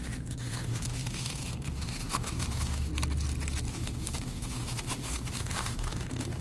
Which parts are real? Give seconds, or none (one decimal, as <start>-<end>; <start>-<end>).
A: 2.9-3.7